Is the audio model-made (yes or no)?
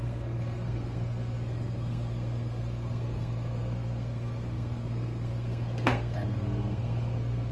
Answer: yes